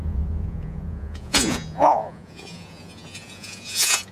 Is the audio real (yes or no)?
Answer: no